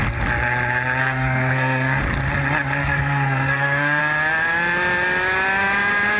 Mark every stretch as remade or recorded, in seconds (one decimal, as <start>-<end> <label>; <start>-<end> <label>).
0.0-1.0 recorded; 1.0-2.0 remade; 2.0-2.8 recorded; 2.8-4.0 remade; 4.0-6.2 recorded